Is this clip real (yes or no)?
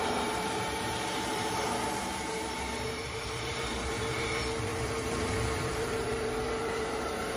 no